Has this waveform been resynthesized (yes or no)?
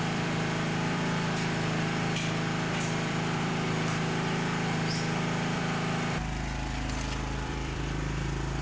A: yes